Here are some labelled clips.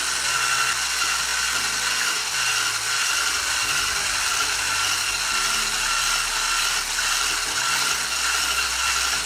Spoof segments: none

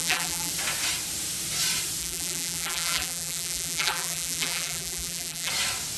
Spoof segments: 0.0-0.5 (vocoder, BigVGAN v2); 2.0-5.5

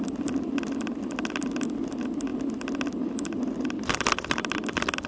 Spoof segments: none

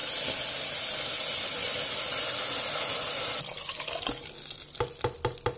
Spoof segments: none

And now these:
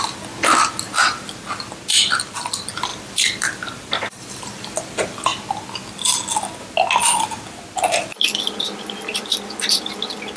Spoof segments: 2.9-4.0 (vocoder, BigVGAN v2); 9.1-9.8